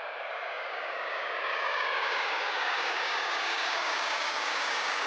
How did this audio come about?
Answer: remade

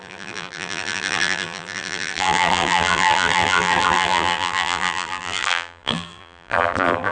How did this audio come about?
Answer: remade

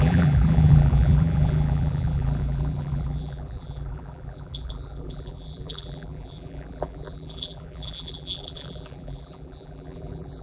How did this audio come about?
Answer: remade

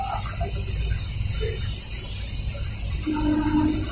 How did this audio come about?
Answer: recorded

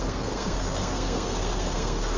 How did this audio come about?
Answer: remade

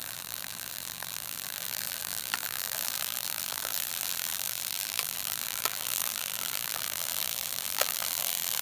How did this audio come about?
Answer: remade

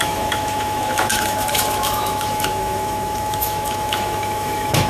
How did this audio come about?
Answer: remade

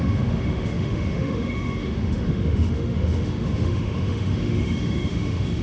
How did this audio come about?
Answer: remade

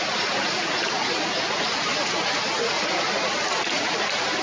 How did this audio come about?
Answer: recorded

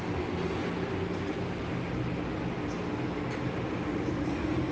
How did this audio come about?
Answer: recorded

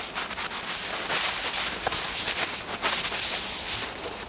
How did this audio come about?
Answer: recorded